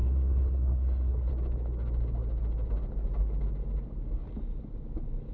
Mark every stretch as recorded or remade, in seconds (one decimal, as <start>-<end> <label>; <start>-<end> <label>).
0.0-1.3 remade; 1.3-5.3 recorded